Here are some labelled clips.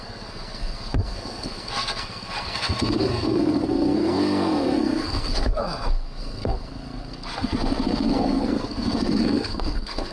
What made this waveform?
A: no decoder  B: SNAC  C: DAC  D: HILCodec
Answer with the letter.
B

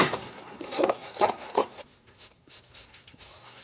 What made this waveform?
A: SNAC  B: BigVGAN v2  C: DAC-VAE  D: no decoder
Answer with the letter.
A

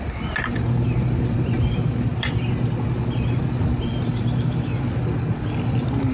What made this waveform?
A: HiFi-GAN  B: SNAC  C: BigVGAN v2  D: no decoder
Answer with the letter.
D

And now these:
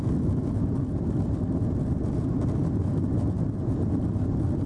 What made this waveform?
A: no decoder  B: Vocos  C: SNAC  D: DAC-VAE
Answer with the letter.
A